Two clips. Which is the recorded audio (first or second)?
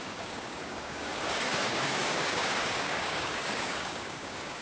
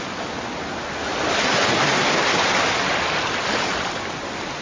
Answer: second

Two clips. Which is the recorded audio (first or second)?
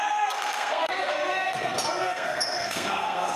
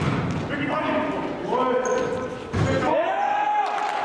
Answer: second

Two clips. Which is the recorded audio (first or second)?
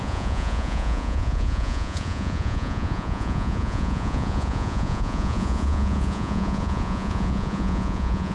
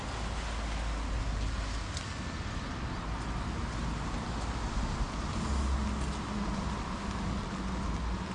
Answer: second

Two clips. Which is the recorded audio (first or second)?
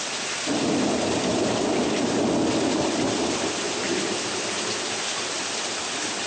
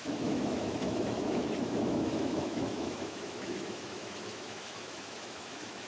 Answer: first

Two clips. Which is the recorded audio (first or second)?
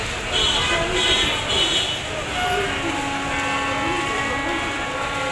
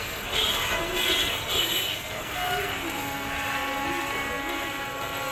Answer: first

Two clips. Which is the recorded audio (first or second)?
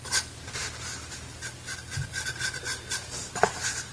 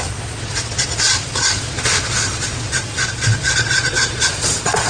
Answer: first